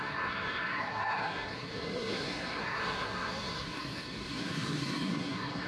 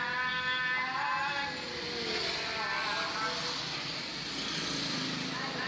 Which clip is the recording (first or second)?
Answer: second